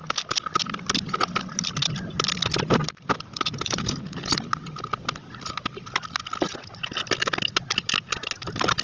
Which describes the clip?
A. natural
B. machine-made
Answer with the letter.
A